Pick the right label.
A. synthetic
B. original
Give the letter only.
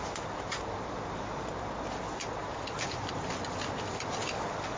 B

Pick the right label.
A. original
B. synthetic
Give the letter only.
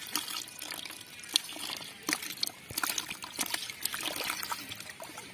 A